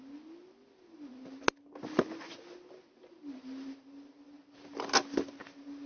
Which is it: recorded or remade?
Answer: recorded